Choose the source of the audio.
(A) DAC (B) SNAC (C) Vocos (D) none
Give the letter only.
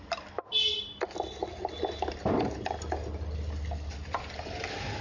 D